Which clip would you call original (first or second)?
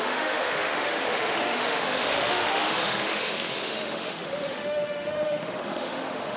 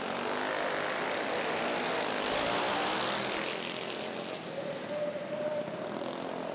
second